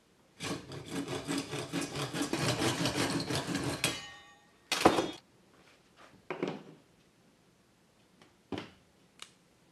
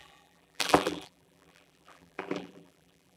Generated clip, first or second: second